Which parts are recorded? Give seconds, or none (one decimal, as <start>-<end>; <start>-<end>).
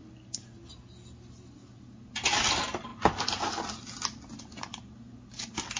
0.0-5.8